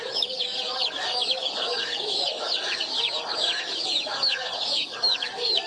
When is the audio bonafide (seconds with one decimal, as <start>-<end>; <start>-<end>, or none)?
none

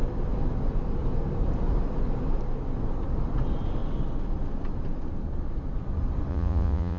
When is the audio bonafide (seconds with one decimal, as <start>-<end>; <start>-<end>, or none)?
0.0-6.3

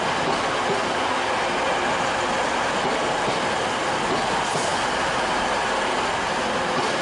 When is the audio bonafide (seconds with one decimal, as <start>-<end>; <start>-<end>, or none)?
0.0-7.0

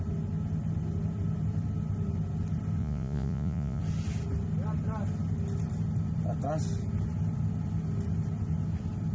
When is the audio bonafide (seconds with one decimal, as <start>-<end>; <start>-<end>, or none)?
0.0-2.8; 3.8-9.1

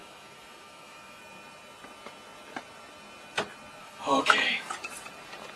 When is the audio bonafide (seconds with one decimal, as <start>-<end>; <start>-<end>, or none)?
1.2-3.8; 4.7-5.6

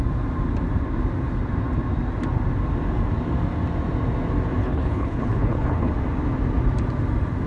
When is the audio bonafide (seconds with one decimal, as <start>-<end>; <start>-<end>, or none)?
0.0-4.6; 5.9-7.5

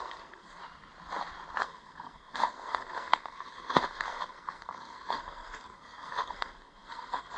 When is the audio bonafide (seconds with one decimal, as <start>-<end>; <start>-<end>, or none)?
0.6-1.6

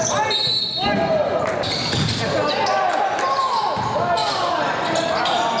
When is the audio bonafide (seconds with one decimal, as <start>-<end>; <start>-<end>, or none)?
0.0-5.6